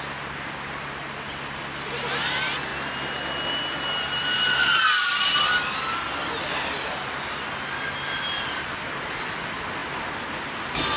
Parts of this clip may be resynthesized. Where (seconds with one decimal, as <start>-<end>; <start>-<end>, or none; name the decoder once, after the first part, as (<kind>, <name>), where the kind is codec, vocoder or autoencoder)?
none